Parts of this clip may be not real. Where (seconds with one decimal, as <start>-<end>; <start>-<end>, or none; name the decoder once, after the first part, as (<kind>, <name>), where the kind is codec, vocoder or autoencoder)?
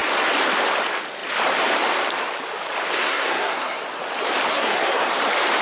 3.0-3.8 (codec, SNAC); 4.5-5.1